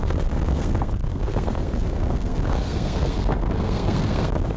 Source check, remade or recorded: remade